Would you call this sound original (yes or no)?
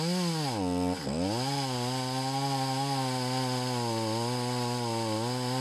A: yes